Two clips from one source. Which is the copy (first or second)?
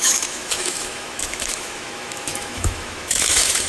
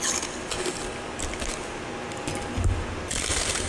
first